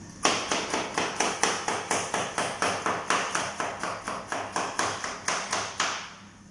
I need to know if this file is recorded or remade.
recorded